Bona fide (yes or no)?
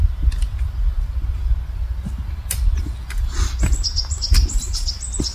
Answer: yes